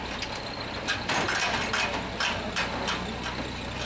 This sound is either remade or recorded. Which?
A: recorded